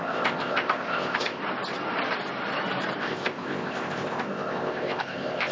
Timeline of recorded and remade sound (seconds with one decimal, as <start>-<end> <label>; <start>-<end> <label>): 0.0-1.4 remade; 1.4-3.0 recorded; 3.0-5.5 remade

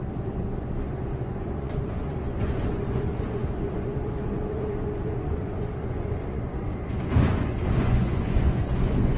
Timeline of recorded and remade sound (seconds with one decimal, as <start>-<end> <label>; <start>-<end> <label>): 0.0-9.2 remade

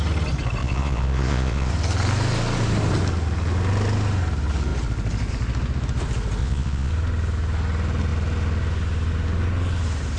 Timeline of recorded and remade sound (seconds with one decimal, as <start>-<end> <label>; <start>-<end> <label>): 0.0-0.6 recorded; 0.6-1.7 remade; 1.7-6.4 recorded; 6.4-6.9 remade; 6.9-10.2 recorded

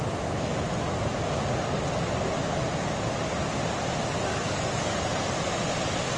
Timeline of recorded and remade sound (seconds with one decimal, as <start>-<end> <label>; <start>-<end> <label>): 0.0-4.3 recorded; 4.3-5.1 remade; 5.1-6.2 recorded